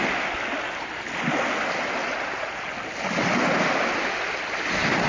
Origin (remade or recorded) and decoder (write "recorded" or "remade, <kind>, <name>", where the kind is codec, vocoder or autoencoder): recorded